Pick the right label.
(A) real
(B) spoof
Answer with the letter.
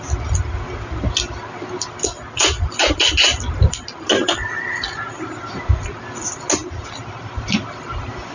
A